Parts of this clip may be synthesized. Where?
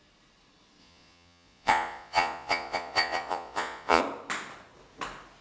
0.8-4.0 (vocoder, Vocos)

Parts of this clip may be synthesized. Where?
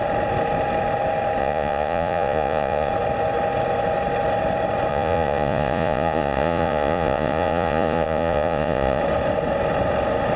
1.4-2.9 (vocoder, Vocos); 4.9-9.0